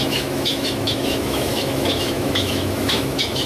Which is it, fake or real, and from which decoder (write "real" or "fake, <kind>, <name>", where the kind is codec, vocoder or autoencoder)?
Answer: fake, autoencoder, DAC-VAE